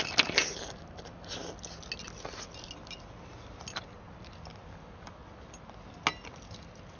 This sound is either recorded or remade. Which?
recorded